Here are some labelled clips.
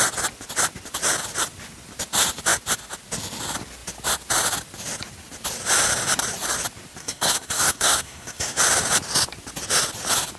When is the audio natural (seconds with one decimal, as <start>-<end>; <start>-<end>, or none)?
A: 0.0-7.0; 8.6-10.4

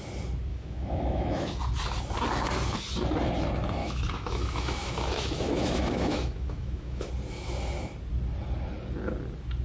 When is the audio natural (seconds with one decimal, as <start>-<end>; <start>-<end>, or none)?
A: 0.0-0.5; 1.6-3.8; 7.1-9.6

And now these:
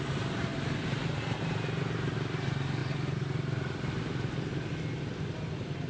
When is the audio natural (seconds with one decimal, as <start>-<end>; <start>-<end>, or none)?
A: 0.0-5.9